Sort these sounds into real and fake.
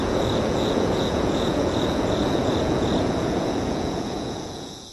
fake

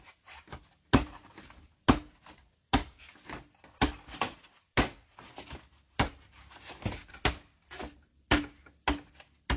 real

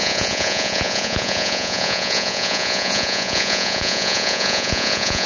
fake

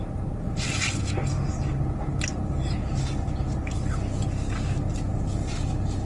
real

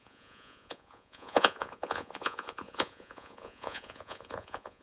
fake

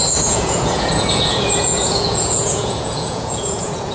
fake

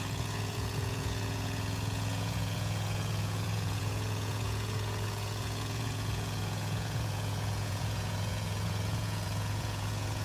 fake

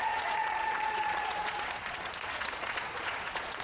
fake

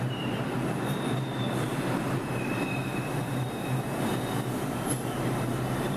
real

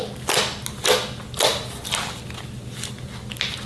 real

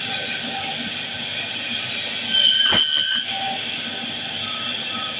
real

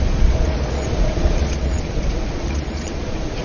fake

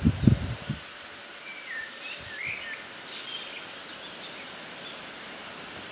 real